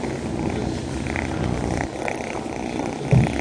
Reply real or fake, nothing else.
real